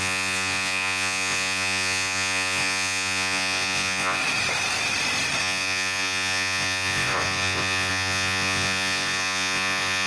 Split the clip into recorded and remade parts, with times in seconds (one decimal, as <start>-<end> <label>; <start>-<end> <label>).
0.0-4.2 remade; 4.2-5.4 recorded; 5.4-10.1 remade